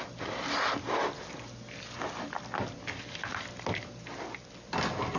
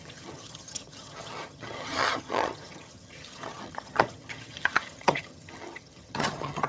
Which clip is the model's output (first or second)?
second